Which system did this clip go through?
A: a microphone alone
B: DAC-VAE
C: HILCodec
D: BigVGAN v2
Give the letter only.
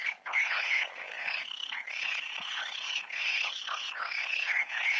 C